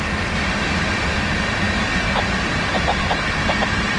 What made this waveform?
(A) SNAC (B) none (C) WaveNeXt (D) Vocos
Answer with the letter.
B